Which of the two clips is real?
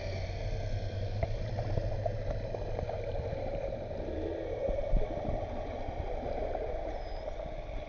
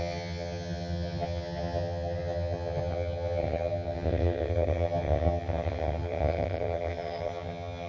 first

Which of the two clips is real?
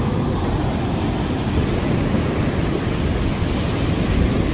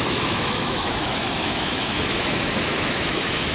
first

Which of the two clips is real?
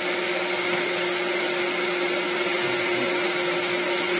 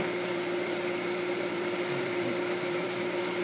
first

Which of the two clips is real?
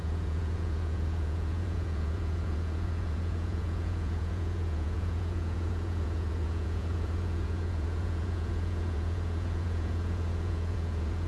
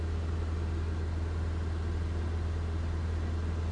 second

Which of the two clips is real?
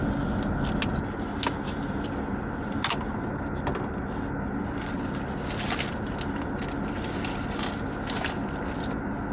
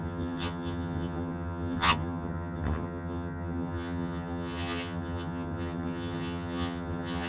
first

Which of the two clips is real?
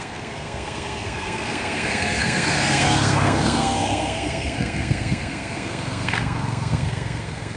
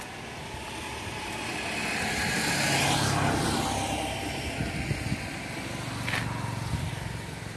second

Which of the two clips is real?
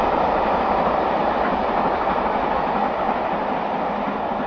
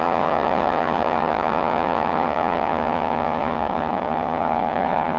first